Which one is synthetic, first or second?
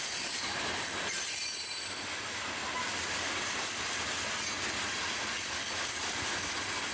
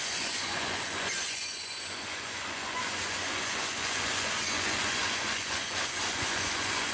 second